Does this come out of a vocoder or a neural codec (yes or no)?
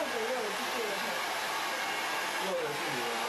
no